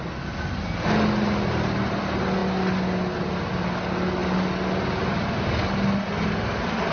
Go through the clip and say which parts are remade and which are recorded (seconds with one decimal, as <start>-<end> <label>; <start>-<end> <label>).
0.0-6.9 recorded